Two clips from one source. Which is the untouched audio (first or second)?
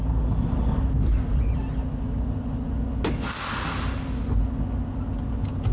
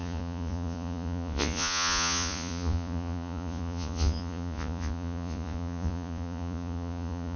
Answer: first